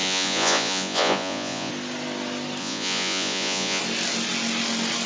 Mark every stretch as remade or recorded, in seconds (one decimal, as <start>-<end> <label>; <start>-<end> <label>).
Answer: 0.0-1.7 remade; 1.7-2.6 recorded; 2.6-3.8 remade; 3.8-5.1 recorded